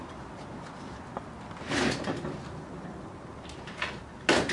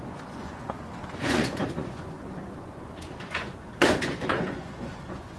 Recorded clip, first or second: first